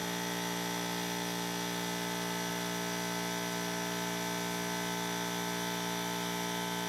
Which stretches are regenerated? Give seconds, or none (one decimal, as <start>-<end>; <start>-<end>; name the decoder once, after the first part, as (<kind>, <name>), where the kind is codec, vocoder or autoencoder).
none